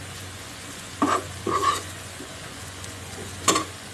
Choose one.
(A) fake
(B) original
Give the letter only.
A